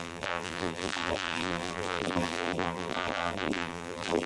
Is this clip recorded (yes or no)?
no